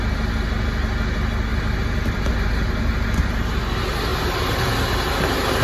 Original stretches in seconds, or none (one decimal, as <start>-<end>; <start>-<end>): 0.0-1.5; 3.6-4.1; 4.6-5.6